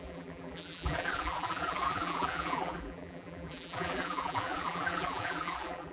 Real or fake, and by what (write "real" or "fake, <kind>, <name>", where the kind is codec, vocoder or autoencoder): fake, vocoder, BigVGAN v2